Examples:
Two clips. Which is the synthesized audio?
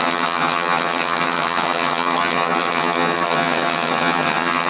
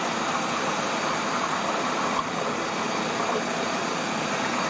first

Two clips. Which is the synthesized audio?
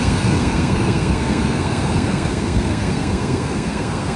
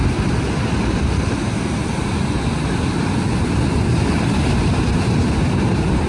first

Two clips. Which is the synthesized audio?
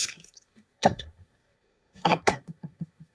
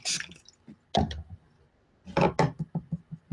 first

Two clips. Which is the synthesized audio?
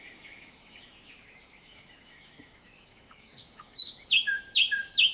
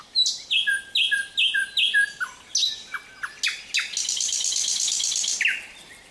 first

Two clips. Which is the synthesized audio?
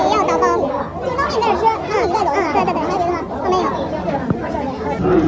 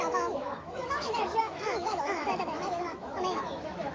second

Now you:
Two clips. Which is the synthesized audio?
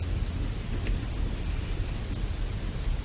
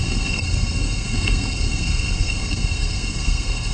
second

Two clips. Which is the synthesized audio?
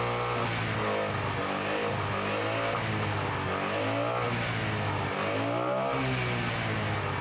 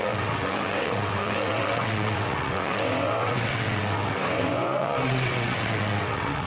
second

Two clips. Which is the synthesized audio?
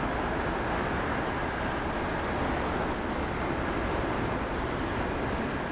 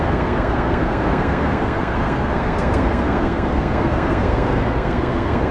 second